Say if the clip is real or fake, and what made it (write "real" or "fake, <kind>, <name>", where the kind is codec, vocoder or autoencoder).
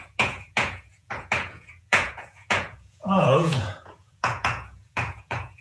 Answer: fake, vocoder, Vocos